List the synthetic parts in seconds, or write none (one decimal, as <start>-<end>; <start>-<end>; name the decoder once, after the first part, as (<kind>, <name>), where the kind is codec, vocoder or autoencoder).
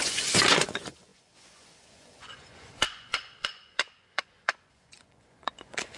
0.0-6.0 (vocoder, Vocos)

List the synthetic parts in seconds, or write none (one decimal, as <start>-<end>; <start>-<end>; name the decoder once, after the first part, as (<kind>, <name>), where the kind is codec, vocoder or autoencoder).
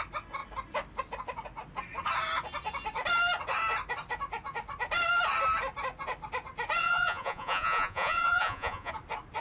6.8-8.9 (vocoder, Vocos)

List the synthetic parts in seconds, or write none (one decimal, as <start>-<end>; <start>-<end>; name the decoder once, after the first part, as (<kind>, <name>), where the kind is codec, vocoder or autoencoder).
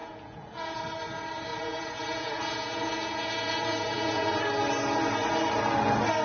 0.0-0.8 (vocoder, Vocos); 1.5-4.4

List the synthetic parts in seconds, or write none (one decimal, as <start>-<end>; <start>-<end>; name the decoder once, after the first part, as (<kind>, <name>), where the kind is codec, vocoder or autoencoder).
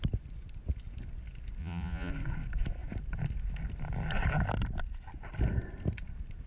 1.6-2.1 (vocoder, Vocos)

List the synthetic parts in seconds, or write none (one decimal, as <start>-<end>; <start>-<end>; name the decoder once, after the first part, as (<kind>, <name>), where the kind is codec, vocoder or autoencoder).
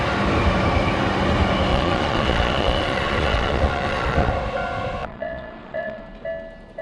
1.7-4.3 (vocoder, Vocos); 5.0-6.0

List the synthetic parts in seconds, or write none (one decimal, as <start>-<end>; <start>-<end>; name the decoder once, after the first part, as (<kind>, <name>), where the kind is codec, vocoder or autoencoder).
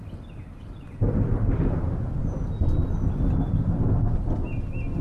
none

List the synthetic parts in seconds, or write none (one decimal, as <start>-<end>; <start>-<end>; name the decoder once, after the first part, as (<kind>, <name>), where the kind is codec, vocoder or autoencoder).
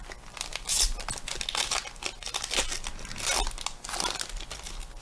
none